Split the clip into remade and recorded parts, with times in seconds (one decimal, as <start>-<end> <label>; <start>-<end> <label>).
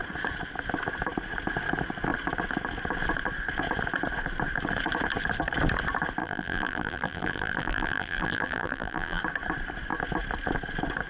0.0-6.2 recorded; 6.2-9.2 remade; 9.2-11.1 recorded